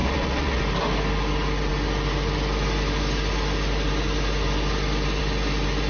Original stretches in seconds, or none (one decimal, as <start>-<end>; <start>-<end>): 0.6-5.9

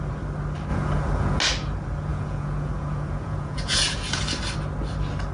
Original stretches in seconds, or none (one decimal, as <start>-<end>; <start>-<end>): 0.0-0.7; 1.4-2.1; 4.2-5.3

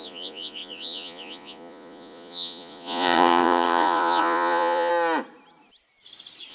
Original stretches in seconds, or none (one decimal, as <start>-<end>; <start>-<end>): 4.9-6.5